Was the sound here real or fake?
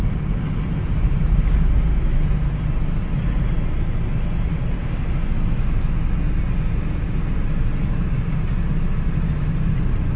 real